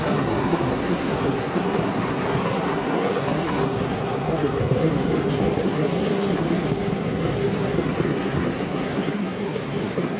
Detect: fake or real fake